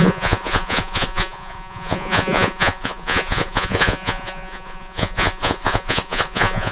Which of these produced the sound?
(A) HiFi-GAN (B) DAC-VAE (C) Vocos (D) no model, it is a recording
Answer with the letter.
C